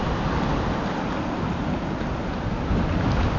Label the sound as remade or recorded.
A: recorded